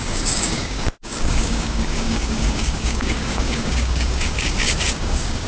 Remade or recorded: remade